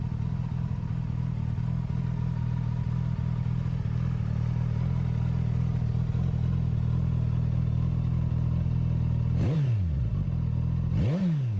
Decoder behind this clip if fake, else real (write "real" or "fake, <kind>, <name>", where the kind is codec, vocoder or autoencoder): real